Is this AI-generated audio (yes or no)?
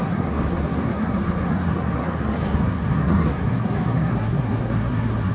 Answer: yes